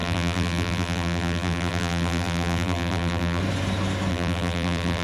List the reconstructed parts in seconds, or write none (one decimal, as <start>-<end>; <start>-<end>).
0.0-3.4; 4.1-5.0